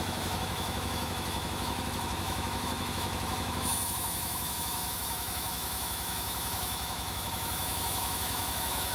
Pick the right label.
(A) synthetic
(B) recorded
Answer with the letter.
A